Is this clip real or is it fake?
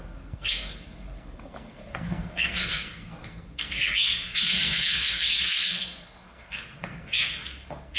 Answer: fake